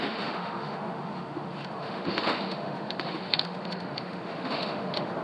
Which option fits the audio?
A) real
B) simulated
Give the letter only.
B